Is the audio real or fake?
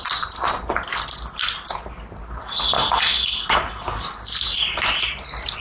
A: real